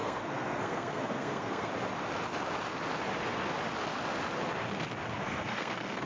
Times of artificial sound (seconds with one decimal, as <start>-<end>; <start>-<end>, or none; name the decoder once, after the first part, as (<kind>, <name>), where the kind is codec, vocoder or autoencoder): 0.0-1.7 (codec, SNAC); 5.1-6.1